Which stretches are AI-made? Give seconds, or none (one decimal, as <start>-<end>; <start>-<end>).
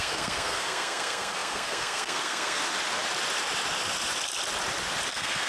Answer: 0.0-2.6; 5.1-5.5